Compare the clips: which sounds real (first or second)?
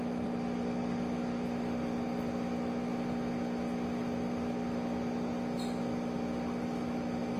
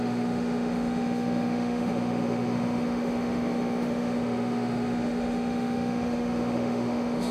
first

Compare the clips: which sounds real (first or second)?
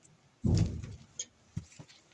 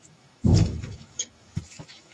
first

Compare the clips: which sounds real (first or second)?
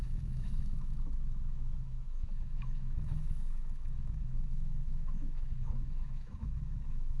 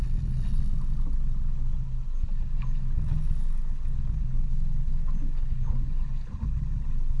second